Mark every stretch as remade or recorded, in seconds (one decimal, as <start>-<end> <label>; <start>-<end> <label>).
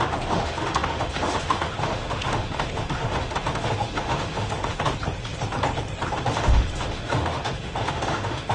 0.0-4.9 remade; 4.9-6.2 recorded; 6.2-8.5 remade